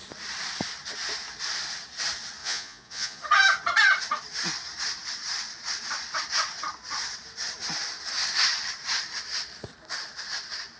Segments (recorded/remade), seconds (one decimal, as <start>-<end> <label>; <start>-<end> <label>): 0.0-2.4 recorded; 2.4-3.2 remade; 3.2-10.8 recorded